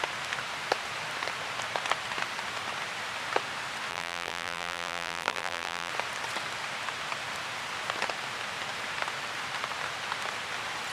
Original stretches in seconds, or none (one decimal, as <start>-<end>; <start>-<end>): 0.0-3.9; 5.9-10.9

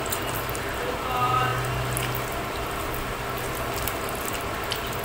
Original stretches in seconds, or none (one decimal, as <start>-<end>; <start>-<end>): 0.0-5.0

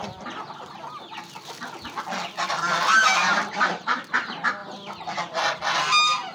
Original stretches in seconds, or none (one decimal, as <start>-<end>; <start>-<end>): 0.0-3.0; 4.0-6.3

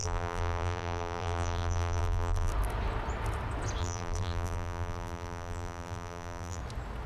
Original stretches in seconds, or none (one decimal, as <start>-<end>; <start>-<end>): 2.5-3.8; 6.6-7.1

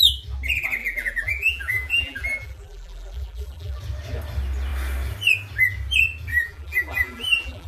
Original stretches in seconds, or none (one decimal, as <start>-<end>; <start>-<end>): 0.0-0.8; 3.8-6.3

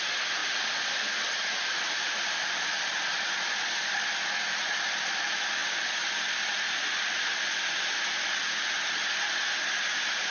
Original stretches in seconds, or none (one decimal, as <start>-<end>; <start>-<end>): 0.0-0.4; 3.5-10.3